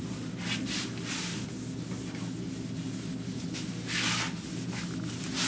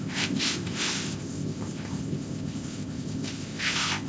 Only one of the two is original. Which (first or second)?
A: first